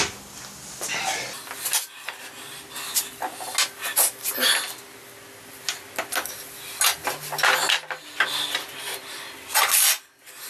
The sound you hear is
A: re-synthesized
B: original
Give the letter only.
B